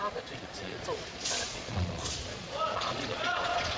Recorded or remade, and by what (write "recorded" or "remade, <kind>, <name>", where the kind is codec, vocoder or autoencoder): remade, vocoder, Vocos